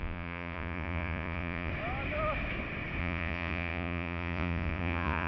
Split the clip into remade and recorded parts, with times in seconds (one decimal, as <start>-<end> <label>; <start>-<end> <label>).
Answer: 0.0-1.7 remade; 1.7-3.0 recorded; 3.0-5.3 remade